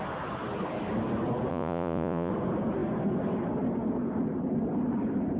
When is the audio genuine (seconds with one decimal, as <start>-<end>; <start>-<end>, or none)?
0.0-1.5; 2.3-5.4